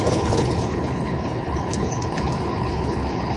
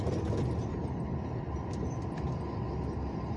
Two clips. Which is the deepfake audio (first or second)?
first